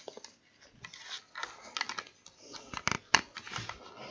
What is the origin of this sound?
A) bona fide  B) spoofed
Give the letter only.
A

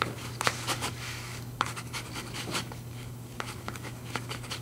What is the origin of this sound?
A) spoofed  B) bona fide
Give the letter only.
A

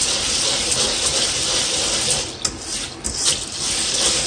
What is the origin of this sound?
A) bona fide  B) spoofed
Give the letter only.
A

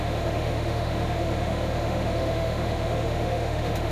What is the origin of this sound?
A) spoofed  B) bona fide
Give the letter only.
A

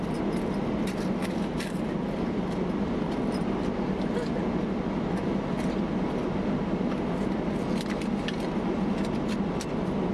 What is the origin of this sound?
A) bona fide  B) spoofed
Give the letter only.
A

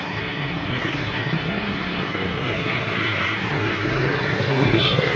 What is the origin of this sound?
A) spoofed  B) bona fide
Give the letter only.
A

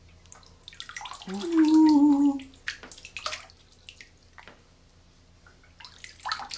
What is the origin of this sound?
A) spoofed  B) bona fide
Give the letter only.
B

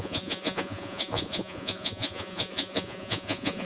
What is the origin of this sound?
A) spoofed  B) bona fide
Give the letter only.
A